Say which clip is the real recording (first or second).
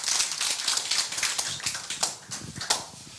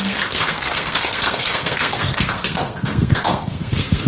first